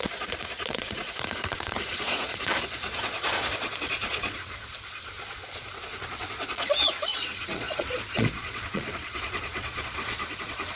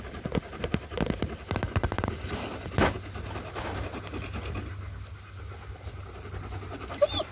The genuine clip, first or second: second